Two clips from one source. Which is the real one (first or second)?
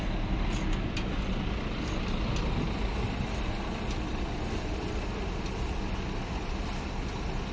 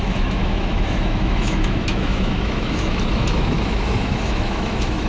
first